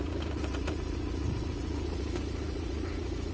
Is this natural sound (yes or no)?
no